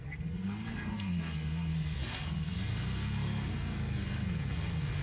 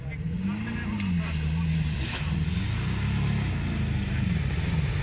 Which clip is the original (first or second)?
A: second